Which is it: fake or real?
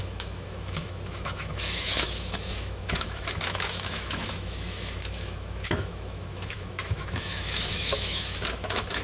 fake